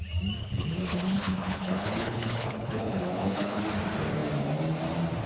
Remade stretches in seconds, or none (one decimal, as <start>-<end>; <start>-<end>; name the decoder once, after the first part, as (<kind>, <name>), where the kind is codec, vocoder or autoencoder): 0.4-3.6 (codec, HILCodec)